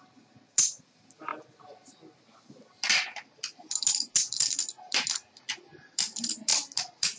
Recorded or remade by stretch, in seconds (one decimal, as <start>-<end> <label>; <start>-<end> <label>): 0.0-7.2 recorded